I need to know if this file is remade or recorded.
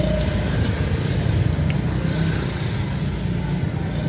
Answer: recorded